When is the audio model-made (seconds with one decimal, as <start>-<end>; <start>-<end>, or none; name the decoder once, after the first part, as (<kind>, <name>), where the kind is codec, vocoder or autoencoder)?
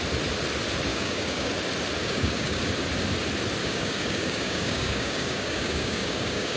0.9-1.5 (codec, DAC); 2.0-2.6; 3.6-6.6